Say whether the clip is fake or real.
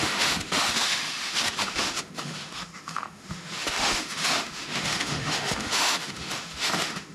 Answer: fake